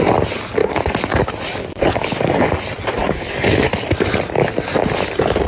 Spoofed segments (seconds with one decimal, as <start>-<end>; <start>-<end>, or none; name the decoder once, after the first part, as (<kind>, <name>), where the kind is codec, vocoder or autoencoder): 0.6-1.2 (codec, DAC); 1.6-2.5; 3.0-3.7

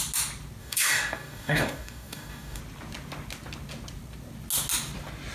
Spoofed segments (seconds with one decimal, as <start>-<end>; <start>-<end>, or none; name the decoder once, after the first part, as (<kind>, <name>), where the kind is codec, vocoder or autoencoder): 0.6-2.6 (codec, DAC)

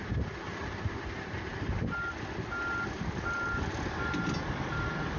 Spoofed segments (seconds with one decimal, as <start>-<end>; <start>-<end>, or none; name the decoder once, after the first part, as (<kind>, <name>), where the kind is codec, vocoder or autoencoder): none

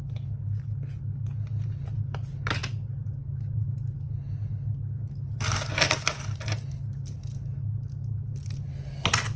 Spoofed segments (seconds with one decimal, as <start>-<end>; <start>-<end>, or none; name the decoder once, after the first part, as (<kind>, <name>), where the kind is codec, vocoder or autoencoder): none

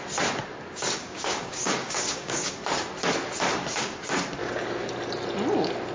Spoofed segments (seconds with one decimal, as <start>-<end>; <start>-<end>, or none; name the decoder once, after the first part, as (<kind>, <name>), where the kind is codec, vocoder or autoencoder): 1.0-2.5 (codec, DAC); 4.4-4.9